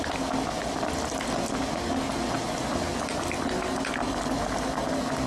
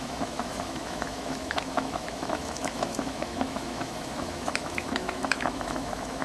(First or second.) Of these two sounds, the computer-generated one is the second